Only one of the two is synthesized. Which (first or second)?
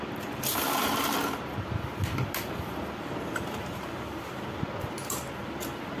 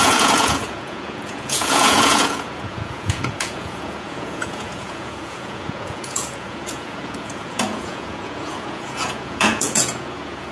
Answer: second